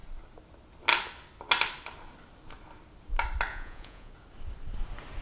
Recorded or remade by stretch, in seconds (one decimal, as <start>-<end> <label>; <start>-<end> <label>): 0.0-3.5 recorded; 3.5-4.1 remade; 4.1-5.2 recorded

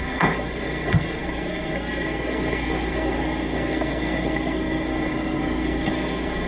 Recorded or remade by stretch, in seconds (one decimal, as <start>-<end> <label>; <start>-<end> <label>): 0.0-6.5 remade

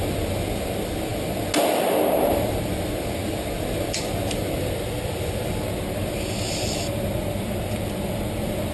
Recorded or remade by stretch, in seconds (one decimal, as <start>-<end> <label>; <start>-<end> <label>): 0.0-8.7 recorded